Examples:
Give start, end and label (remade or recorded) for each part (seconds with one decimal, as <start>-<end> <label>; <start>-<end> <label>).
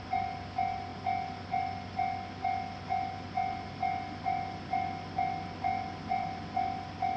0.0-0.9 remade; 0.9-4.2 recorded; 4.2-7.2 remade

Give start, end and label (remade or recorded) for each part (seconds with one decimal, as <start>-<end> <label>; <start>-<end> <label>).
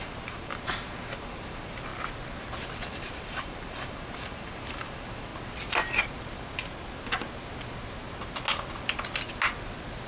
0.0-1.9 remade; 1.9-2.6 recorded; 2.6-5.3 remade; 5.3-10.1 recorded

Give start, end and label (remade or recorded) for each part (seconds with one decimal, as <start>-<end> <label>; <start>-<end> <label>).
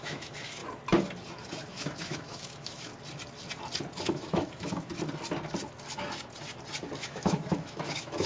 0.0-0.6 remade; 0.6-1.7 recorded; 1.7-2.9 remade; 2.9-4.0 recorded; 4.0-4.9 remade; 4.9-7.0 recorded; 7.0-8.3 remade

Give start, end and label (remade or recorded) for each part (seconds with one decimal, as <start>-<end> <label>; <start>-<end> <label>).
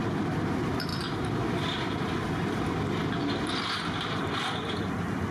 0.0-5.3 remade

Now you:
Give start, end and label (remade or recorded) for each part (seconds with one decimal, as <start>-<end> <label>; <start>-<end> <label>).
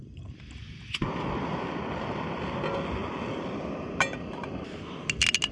0.0-5.5 recorded